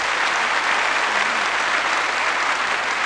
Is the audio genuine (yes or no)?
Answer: yes